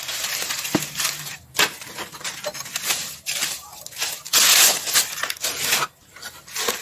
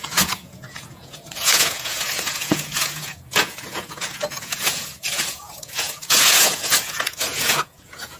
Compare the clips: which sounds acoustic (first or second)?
first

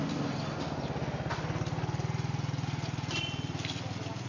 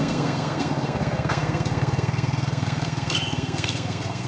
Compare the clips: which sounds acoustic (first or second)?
first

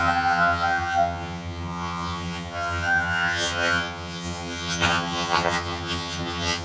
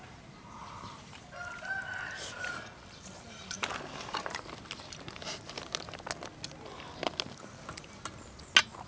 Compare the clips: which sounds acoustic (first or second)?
second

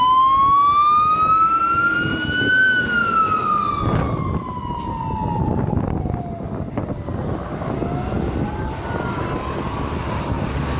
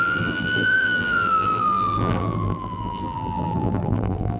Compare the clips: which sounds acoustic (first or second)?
first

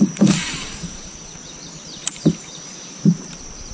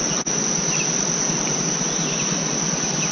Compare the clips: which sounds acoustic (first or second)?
second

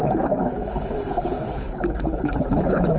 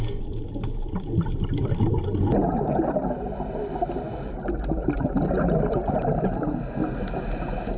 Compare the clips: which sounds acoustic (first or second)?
second